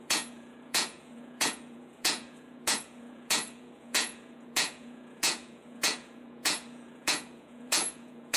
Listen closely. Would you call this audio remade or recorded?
remade